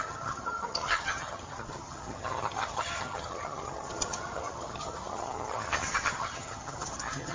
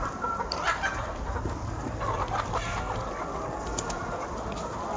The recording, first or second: second